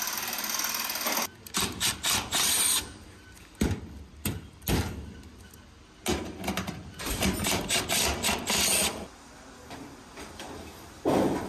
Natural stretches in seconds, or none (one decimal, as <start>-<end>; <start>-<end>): 0.0-6.1; 7.6-11.5

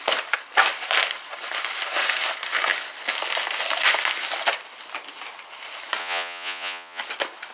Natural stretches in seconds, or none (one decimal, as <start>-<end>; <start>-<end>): 0.0-6.0; 7.0-7.5

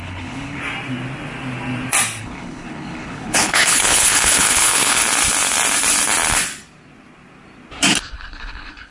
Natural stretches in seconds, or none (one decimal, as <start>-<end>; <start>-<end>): 0.6-2.2; 5.0-8.1

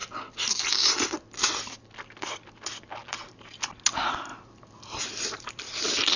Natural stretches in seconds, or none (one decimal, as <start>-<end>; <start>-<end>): 0.0-3.0; 3.7-4.3; 5.6-6.2

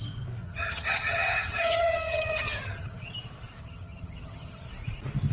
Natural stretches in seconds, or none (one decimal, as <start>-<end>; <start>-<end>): 0.0-0.4; 3.1-3.6; 4.7-5.3